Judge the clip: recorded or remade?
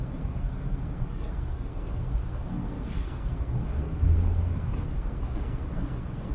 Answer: remade